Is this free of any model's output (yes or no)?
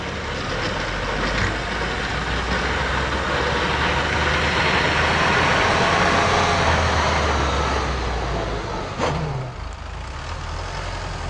yes